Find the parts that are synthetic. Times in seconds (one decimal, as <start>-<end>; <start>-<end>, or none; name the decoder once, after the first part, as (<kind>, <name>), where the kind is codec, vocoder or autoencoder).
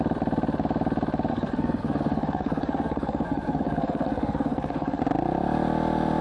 1.3-5.0 (codec, SNAC)